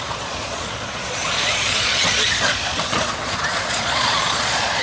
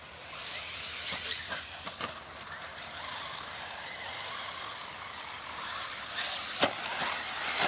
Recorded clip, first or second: second